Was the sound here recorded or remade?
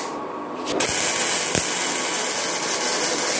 recorded